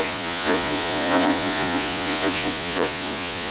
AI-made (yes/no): yes